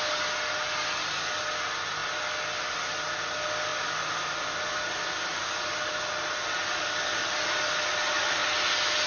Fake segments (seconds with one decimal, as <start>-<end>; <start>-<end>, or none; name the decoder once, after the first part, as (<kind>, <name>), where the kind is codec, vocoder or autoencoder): none